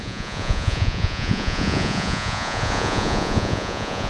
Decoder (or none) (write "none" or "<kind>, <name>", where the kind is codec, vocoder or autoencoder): vocoder, Vocos